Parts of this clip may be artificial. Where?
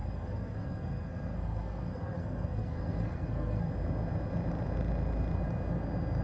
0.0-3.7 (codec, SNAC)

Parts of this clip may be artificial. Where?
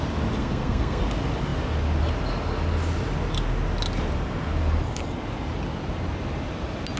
0.4-1.0 (codec, SNAC)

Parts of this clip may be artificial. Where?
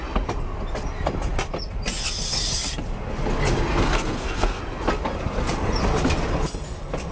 3.7-4.6 (codec, SNAC)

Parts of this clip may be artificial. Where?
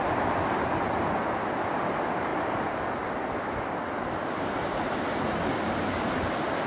none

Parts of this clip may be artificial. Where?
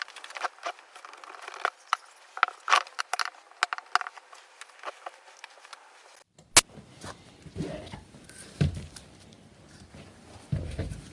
none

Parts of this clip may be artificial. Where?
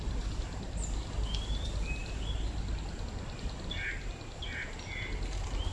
none